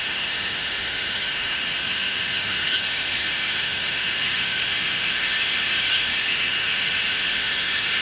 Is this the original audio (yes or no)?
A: no